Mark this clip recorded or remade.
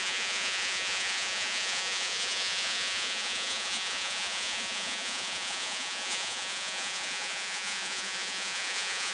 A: remade